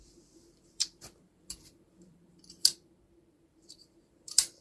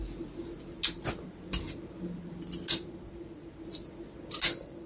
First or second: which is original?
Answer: second